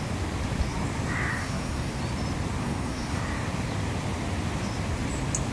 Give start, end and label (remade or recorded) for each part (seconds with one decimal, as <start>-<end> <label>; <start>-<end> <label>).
0.0-1.3 recorded; 1.3-2.0 remade; 2.0-2.6 recorded; 2.6-3.2 remade; 3.2-5.5 recorded